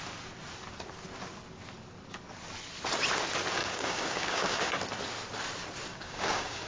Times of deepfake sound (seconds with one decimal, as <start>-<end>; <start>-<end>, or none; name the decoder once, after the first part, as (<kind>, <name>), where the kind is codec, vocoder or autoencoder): 3.6-4.7 (codec, DAC); 5.9-6.7